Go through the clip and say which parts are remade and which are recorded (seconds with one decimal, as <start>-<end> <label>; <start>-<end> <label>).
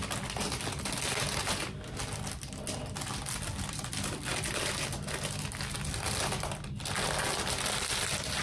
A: 0.0-8.4 recorded